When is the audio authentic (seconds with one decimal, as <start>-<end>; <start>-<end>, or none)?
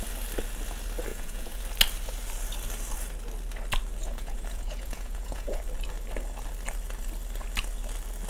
0.0-1.1; 1.6-4.0; 5.6-8.3